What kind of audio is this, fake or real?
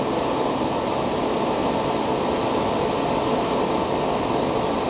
real